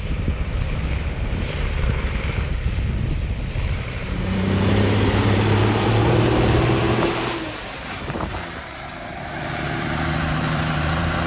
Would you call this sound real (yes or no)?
no